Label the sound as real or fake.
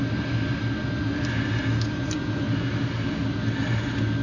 real